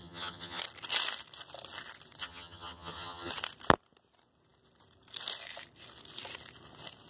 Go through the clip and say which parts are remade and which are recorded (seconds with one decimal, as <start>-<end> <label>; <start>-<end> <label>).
0.0-0.6 remade; 0.6-2.2 recorded; 2.2-3.3 remade; 3.3-7.1 recorded